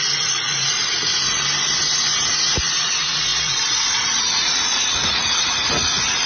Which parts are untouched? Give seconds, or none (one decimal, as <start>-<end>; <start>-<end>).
1.1-2.4